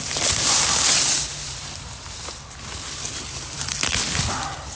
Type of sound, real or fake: real